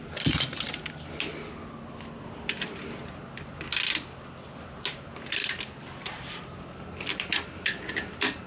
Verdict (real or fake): real